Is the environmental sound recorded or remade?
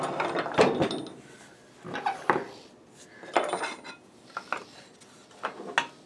recorded